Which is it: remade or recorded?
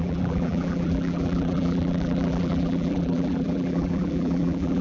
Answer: remade